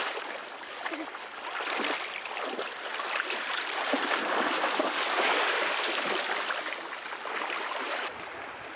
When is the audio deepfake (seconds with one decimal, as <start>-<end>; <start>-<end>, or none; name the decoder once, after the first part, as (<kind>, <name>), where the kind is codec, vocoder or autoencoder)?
2.9-4.0 (vocoder, BigVGAN v2)